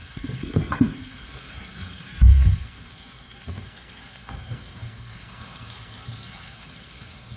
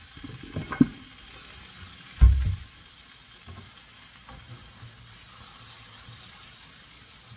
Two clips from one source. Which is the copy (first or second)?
first